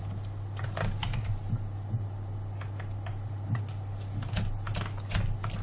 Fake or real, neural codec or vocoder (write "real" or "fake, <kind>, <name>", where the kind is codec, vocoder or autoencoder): real